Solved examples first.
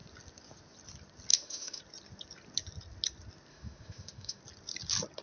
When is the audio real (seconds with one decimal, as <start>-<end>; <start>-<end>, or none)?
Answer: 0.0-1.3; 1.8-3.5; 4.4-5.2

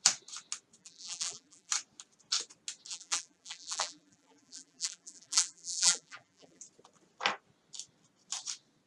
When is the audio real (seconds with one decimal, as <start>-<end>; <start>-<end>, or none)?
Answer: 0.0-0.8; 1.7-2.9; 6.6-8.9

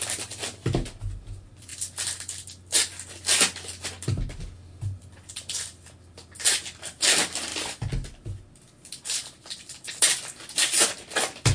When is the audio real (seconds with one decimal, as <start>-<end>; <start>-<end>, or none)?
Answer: 0.0-11.5

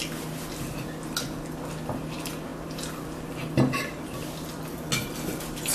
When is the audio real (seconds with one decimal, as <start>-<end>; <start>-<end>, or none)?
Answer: 0.0-5.7

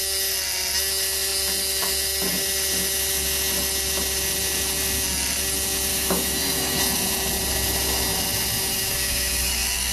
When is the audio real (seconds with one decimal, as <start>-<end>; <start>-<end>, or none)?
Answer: 0.0-5.9; 6.8-8.7; 9.5-9.9